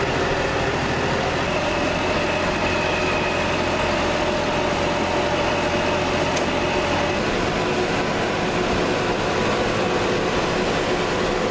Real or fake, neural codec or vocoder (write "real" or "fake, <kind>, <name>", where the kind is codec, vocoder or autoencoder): real